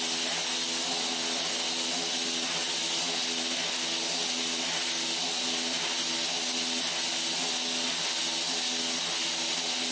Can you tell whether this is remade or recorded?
recorded